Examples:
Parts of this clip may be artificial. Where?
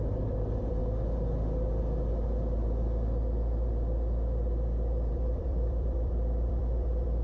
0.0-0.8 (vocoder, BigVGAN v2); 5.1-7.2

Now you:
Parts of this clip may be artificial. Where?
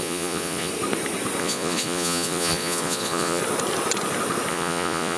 0.0-0.7 (vocoder, Vocos); 1.4-3.4; 4.5-5.2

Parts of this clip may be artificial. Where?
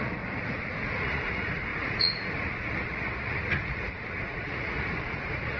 0.0-5.6 (vocoder, Vocos)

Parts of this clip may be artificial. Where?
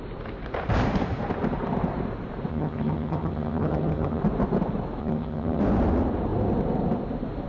2.5-4.2 (vocoder, HiFi-GAN); 5.0-5.6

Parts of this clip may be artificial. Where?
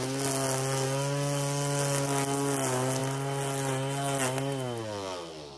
none